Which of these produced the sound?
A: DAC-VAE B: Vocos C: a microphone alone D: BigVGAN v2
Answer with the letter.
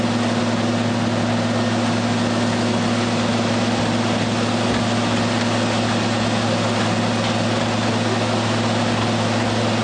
C